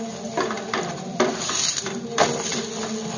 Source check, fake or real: real